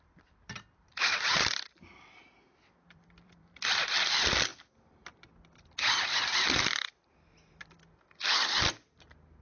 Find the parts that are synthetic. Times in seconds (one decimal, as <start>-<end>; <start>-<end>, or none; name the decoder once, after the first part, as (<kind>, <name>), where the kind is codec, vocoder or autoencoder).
0.0-4.5 (vocoder, BigVGAN v2); 6.2-8.2